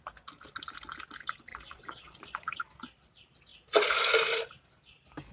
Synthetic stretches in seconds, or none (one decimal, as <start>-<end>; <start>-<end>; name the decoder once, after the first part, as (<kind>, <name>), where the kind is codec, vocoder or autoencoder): 1.5-2.6 (vocoder, Vocos)